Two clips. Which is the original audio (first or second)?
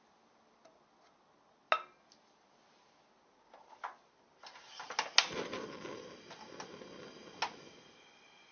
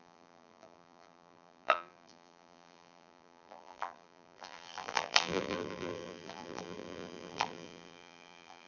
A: first